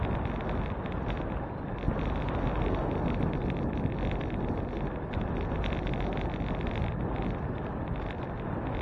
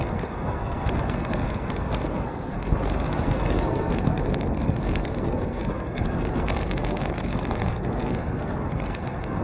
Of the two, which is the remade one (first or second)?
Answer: second